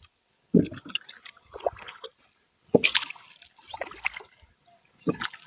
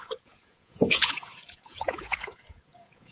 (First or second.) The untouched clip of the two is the first